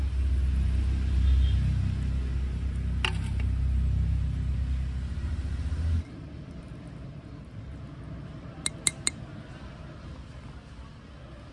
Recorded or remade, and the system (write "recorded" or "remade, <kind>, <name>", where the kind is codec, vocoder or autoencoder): recorded